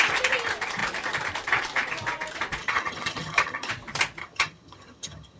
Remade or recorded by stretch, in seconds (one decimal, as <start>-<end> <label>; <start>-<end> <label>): 0.0-2.6 recorded; 2.6-3.7 remade; 3.7-4.2 recorded; 4.2-5.4 remade